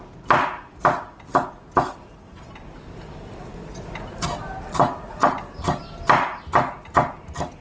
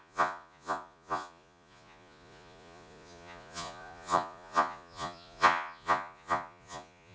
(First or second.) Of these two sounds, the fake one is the second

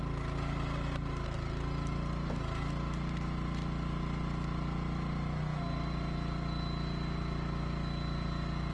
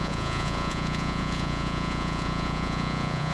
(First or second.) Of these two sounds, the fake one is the second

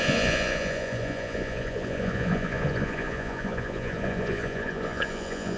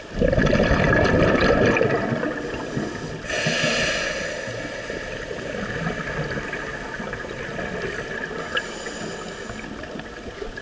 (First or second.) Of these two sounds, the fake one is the first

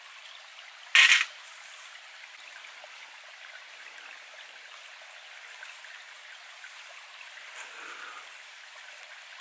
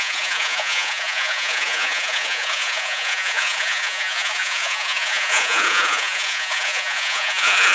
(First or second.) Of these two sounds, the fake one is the second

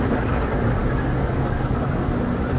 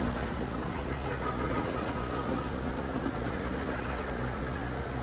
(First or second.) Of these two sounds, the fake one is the second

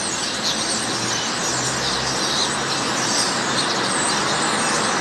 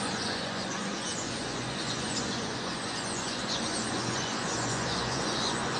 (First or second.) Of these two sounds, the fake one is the second